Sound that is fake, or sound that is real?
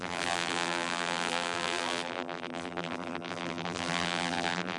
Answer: fake